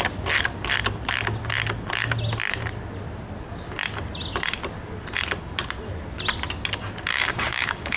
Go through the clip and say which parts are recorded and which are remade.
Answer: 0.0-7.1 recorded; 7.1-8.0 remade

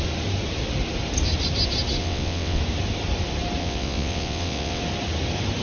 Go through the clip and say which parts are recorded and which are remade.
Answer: 0.0-2.0 recorded; 2.0-2.6 remade; 2.6-3.6 recorded; 3.6-4.8 remade; 4.8-5.6 recorded

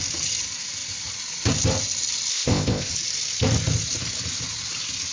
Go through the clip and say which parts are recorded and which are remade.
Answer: 0.0-2.3 recorded; 2.3-2.9 remade; 2.9-5.1 recorded